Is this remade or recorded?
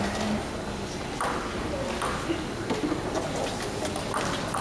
recorded